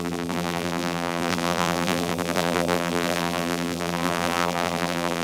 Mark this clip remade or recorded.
remade